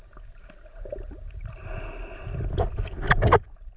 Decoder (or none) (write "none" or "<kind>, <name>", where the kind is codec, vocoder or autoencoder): none